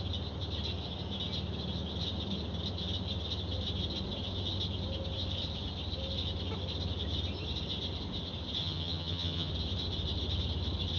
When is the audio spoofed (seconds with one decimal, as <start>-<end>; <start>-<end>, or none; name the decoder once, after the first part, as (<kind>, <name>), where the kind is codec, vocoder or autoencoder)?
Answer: 8.6-9.5 (vocoder, HiFi-GAN)